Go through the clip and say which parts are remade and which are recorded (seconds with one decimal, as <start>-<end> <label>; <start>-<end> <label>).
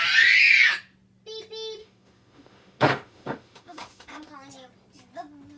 0.0-1.8 recorded; 1.8-4.3 remade; 4.3-5.6 recorded